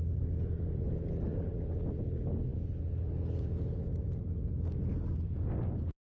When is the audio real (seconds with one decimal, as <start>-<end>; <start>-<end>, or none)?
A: 0.0-6.1